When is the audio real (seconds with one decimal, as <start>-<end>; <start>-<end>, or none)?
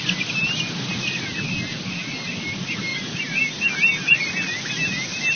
0.0-5.4